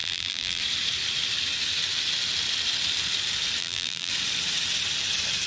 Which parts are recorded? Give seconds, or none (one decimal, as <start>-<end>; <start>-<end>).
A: 0.6-3.6; 4.1-5.5